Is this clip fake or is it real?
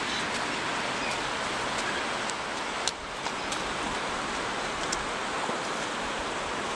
real